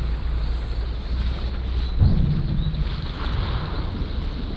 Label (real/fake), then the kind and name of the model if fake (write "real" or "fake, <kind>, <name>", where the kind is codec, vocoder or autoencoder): real